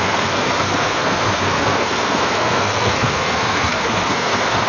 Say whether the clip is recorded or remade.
remade